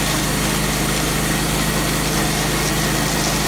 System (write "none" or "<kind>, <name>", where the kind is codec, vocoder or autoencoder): none